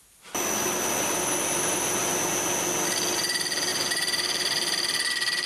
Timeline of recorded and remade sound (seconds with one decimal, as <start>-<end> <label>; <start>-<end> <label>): 0.0-3.7 recorded; 3.7-5.5 remade